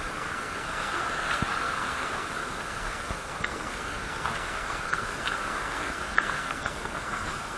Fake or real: fake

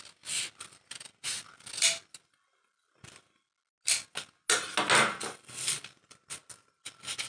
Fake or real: real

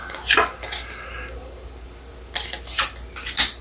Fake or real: real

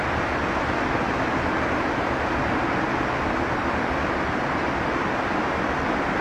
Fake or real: real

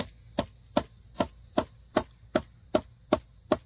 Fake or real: real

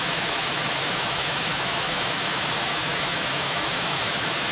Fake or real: fake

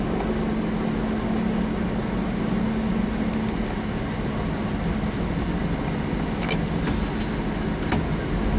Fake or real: real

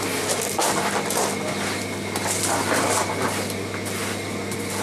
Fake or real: real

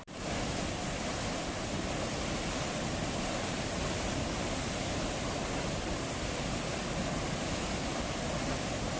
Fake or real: real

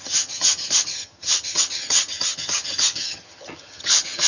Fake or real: fake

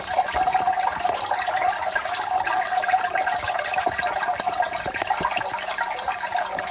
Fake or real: real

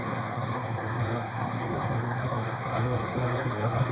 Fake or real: fake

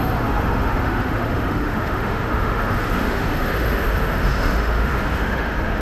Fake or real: fake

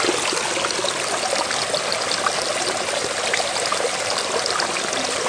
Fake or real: real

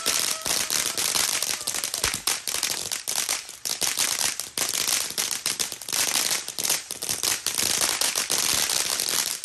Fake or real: fake